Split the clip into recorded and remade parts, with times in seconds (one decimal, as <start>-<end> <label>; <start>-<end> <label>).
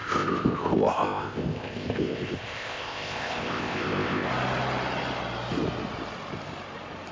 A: 0.0-4.3 remade; 4.3-7.1 recorded